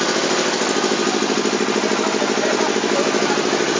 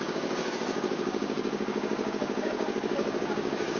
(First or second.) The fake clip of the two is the second